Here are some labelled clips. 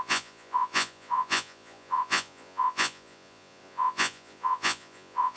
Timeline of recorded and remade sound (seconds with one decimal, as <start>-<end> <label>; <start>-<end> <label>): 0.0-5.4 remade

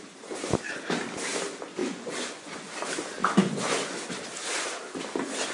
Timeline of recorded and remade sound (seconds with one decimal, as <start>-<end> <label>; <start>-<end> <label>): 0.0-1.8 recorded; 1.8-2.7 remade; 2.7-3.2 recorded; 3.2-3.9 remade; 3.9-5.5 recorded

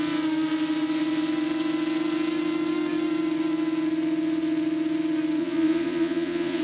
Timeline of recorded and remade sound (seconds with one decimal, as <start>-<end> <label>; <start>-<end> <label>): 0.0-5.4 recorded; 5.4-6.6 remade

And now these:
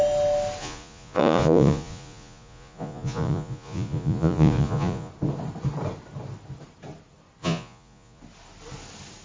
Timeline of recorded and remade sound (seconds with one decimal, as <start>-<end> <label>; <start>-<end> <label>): 0.0-0.6 recorded; 0.6-5.1 remade; 5.1-7.4 recorded; 7.4-8.2 remade; 8.2-9.2 recorded